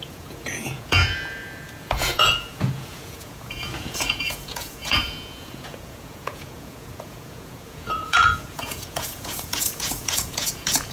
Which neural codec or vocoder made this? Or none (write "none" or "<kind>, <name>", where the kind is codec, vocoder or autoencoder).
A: vocoder, Vocos